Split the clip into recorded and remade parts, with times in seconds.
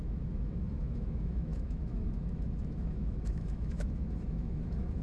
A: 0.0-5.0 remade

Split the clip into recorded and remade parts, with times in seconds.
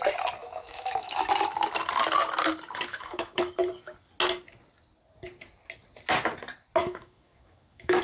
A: 0.0-0.4 recorded; 0.4-1.3 remade; 1.3-2.9 recorded; 2.9-3.5 remade; 3.5-6.8 recorded; 6.8-8.0 remade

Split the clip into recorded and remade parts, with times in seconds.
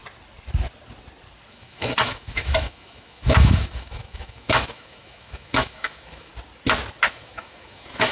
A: 0.0-1.5 recorded; 1.5-6.3 remade; 6.3-7.1 recorded; 7.1-8.1 remade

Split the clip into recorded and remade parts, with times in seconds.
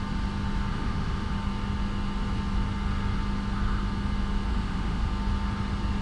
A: 0.0-0.7 recorded; 0.7-1.3 remade; 1.3-4.5 recorded; 4.5-5.1 remade; 5.1-6.0 recorded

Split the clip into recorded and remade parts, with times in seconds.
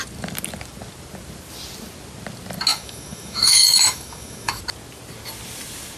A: 0.0-2.7 recorded; 2.7-4.6 remade; 4.6-6.0 recorded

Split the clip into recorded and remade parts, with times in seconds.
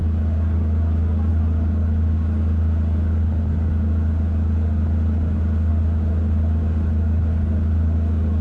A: 0.0-8.4 recorded